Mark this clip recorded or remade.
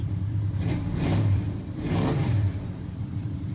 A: remade